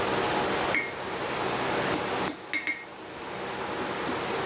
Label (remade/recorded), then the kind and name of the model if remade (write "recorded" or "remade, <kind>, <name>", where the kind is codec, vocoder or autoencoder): recorded